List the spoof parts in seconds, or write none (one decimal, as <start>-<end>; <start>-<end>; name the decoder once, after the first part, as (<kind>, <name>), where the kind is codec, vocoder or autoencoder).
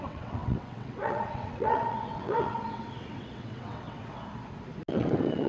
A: 0.0-4.2 (vocoder, WaveNeXt); 4.9-5.5